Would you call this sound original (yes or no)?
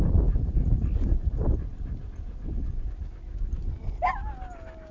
yes